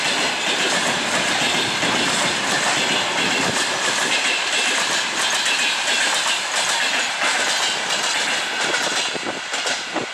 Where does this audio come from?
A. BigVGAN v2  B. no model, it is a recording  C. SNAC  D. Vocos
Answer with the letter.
A